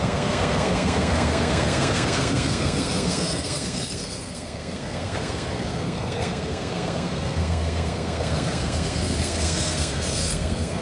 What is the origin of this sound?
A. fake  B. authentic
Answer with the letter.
A